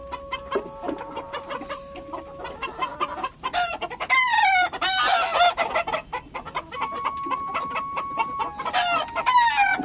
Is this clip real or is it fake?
real